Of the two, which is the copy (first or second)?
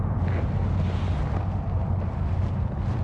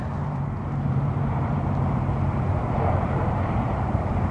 second